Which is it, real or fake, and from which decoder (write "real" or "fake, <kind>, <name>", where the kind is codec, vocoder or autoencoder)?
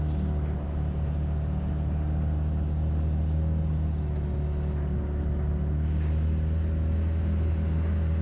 real